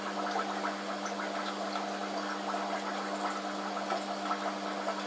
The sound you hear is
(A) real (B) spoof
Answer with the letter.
A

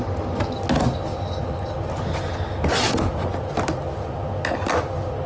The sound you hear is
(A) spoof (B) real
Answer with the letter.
B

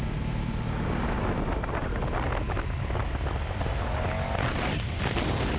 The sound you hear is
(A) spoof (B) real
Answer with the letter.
B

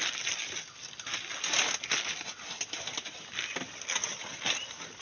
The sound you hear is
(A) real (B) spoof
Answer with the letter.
A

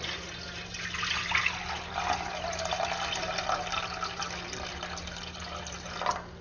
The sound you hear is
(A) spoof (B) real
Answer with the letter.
B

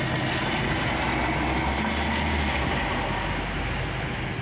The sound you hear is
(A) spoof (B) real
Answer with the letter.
B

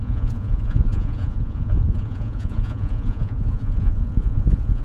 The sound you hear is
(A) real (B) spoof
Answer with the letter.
B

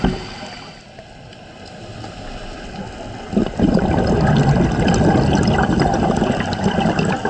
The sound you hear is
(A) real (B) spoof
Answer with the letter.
A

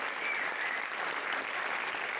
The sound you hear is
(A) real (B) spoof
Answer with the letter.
A